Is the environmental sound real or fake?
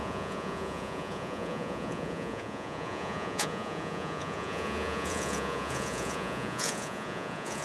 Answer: fake